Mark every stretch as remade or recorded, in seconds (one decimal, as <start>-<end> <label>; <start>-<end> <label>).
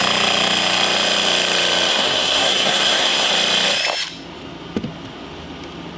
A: 0.0-1.9 recorded; 1.9-3.3 remade; 3.3-6.0 recorded